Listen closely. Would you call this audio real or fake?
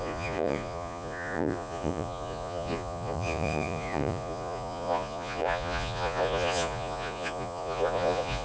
fake